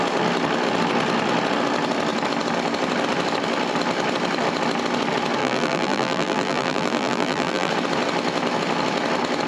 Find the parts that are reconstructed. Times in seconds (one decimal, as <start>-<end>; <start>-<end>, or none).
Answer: 5.4-7.7